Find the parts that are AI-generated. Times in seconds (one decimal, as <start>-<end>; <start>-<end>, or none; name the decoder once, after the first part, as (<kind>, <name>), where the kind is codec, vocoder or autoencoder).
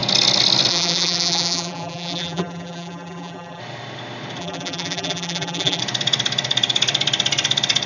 0.7-3.6 (vocoder, BigVGAN v2); 4.4-5.8